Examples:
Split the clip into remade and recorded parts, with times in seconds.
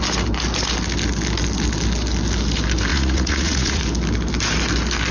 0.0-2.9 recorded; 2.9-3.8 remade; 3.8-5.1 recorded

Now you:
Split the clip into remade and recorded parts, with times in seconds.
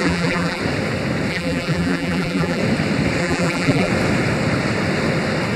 0.0-0.6 remade; 0.6-1.3 recorded; 1.3-2.6 remade; 2.6-3.2 recorded; 3.2-3.9 remade; 3.9-5.6 recorded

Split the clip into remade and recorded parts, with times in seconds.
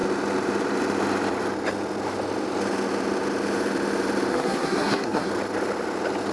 0.0-4.3 recorded; 4.3-5.3 remade; 5.3-6.3 recorded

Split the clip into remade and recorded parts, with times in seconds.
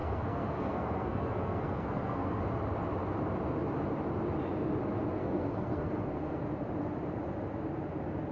0.0-2.4 remade; 2.4-5.2 recorded; 5.2-6.4 remade; 6.4-8.3 recorded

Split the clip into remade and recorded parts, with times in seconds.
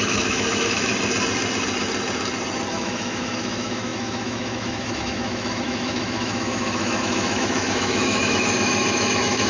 0.0-0.9 remade; 0.9-2.7 recorded; 2.7-9.5 remade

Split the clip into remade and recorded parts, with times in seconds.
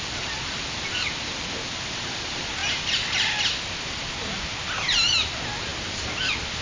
0.0-6.6 recorded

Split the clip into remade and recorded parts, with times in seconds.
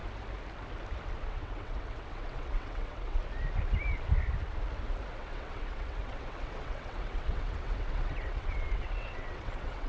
0.0-1.3 recorded; 1.3-3.2 remade; 3.2-5.1 recorded; 5.1-9.9 remade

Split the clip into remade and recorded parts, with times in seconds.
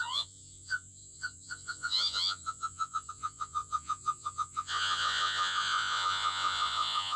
0.0-7.2 remade